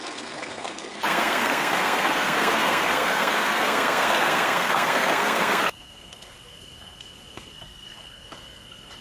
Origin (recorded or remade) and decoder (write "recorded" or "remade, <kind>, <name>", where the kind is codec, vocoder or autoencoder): remade, codec, SNAC